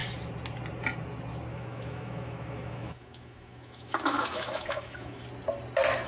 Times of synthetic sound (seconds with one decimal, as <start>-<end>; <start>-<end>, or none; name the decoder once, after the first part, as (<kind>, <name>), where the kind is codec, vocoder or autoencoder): 1.5-5.2 (autoencoder, DAC-VAE)